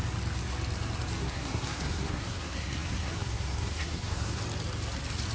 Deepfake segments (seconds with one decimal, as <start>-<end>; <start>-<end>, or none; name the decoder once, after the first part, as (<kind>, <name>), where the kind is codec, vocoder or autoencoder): 1.2-4.4 (codec, SNAC)